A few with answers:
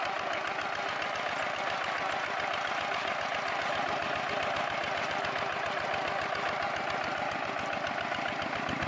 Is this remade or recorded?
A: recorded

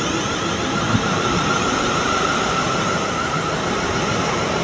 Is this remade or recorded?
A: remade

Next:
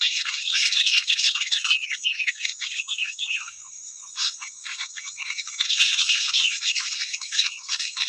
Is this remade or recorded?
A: remade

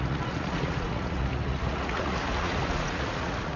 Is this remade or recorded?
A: remade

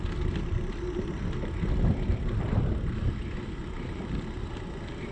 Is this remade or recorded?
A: recorded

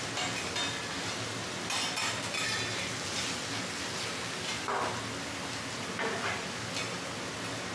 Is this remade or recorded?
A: recorded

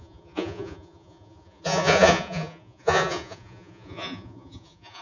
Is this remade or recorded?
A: remade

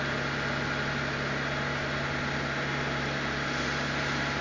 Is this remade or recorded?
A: recorded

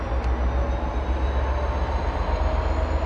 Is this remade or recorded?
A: recorded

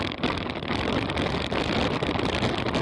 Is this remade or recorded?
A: recorded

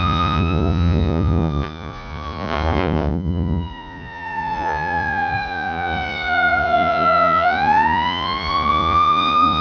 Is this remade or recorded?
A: remade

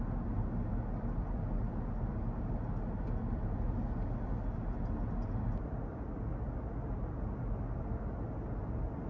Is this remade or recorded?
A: recorded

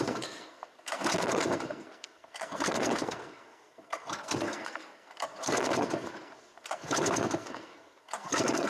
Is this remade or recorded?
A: remade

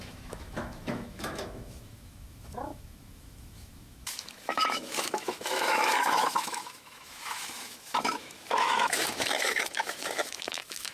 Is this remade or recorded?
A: remade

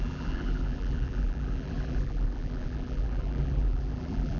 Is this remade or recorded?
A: remade